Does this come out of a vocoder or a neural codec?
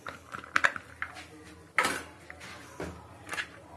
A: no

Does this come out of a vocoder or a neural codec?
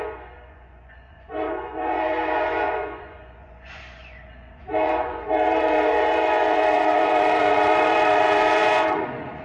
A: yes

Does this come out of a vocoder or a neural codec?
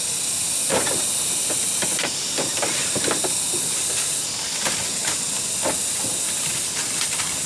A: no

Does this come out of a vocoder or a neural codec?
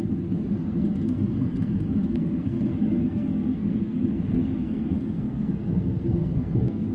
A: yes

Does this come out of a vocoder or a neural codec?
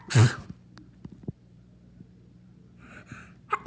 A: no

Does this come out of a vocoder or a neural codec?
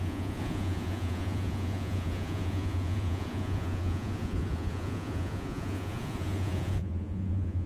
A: yes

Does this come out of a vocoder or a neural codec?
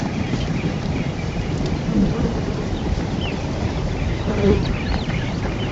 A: yes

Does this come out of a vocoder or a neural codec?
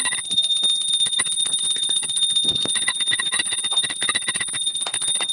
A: no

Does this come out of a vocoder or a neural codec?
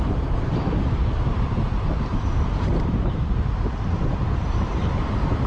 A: yes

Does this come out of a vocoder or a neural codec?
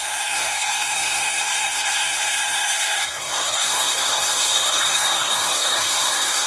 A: yes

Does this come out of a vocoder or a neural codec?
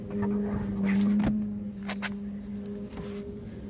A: no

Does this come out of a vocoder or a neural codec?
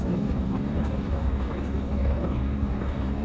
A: yes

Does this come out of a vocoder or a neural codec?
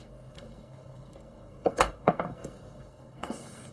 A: yes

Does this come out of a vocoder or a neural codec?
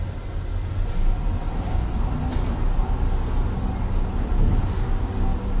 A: no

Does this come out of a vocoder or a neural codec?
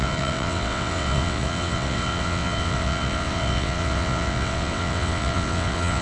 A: yes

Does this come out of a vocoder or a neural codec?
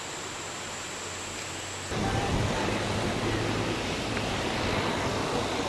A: no